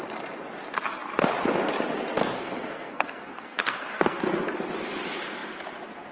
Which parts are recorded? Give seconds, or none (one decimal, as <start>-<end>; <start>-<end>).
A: 0.0-2.2; 4.2-6.1